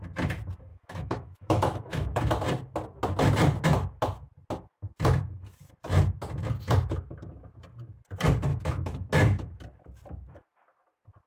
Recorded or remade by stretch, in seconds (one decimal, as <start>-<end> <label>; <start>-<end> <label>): 0.0-0.7 recorded; 0.7-2.2 remade; 2.2-8.5 recorded; 8.5-9.1 remade; 9.1-11.3 recorded

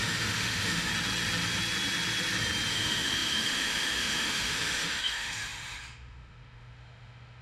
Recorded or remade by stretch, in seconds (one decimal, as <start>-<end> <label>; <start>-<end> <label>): 0.0-0.9 remade; 0.9-2.7 recorded; 2.7-7.4 remade